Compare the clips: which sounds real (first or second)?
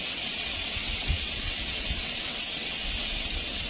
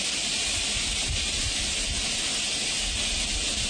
second